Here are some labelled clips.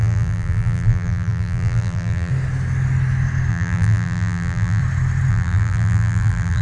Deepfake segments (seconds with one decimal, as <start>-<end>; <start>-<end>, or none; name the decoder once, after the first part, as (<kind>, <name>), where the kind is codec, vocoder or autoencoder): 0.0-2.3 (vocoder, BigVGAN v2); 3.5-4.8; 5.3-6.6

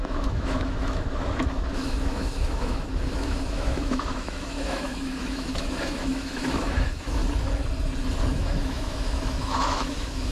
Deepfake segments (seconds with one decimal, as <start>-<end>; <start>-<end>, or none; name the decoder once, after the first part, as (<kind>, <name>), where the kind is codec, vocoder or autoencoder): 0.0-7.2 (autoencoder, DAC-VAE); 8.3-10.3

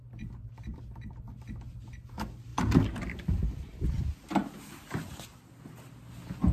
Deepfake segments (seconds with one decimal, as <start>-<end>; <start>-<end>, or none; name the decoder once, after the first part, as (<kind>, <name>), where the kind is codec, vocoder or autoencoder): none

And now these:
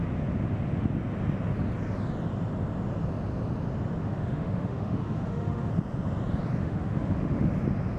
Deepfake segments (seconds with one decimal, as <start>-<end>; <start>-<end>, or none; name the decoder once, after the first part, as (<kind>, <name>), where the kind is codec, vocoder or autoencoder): 4.0-5.7 (autoencoder, DAC-VAE); 6.6-7.5

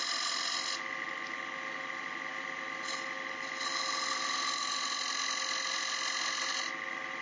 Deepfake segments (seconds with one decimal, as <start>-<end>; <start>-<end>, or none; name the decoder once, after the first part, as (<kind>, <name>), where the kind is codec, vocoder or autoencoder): 2.3-6.5 (vocoder, BigVGAN v2)

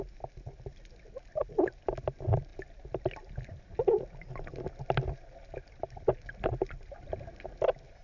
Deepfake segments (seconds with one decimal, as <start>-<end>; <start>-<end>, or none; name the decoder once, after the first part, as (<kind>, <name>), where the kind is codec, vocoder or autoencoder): none

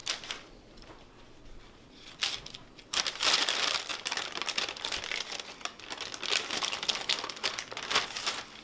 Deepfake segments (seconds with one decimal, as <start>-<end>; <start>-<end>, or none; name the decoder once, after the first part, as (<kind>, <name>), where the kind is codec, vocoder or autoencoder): none

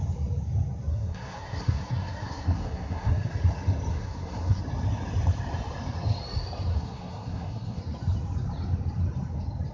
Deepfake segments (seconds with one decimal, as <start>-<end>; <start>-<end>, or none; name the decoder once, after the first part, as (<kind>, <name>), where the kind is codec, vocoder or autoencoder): 0.9-3.3 (codec, SNAC); 3.9-4.6; 6.7-7.8